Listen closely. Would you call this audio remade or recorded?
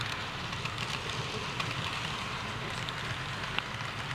recorded